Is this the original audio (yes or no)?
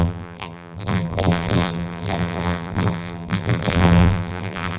no